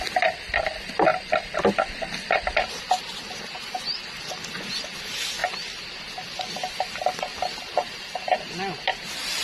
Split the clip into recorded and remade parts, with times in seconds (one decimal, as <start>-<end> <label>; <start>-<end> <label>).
0.0-7.3 recorded; 7.3-8.5 remade; 8.5-9.4 recorded